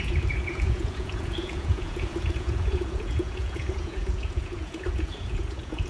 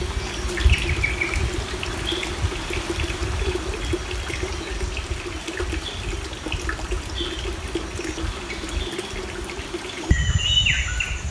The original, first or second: second